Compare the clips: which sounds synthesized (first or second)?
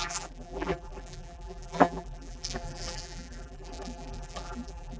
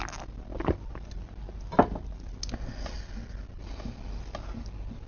first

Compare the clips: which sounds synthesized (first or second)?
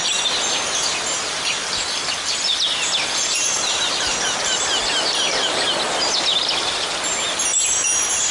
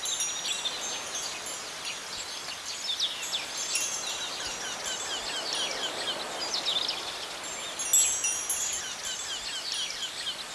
first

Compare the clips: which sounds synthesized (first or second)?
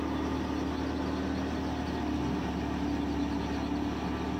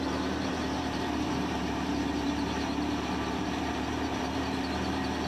second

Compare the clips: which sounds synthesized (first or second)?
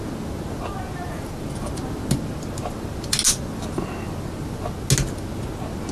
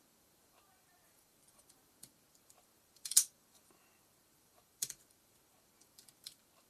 second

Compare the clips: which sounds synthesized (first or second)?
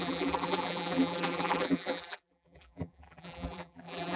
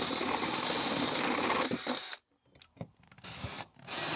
first